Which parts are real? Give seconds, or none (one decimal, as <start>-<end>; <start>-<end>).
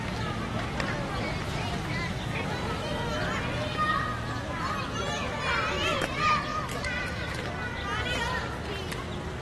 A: 0.0-6.5; 7.3-9.4